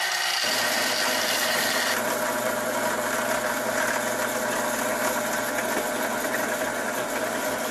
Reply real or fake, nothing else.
real